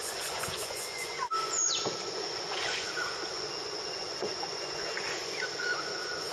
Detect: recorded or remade remade